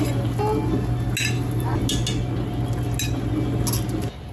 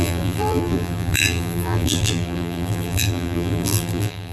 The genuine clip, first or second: first